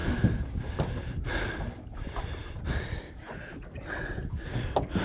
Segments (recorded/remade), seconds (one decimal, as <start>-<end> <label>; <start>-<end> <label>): 0.0-5.0 recorded